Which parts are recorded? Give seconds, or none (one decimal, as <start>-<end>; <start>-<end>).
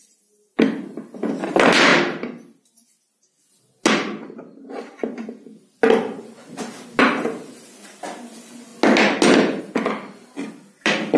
0.0-11.2